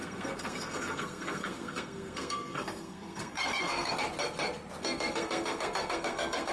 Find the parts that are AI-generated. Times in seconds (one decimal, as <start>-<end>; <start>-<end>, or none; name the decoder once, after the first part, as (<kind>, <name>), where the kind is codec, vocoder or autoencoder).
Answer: 0.0-3.9 (codec, SNAC); 4.8-6.5